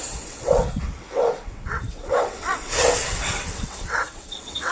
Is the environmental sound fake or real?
fake